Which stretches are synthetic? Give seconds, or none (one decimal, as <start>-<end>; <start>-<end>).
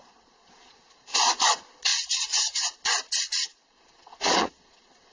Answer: 0.0-5.1